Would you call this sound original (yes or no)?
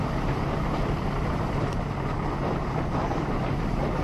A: no